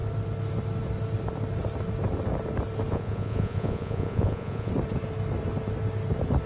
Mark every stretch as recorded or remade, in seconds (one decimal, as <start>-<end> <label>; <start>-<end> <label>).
0.0-2.9 recorded; 2.9-4.7 remade; 4.7-6.5 recorded